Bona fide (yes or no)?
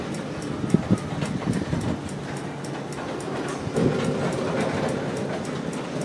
yes